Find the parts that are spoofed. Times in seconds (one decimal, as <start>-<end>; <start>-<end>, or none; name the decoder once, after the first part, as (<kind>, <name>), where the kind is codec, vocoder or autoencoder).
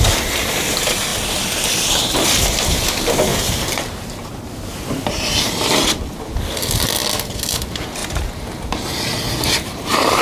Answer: 3.3-5.8 (vocoder, BigVGAN v2); 8.0-10.2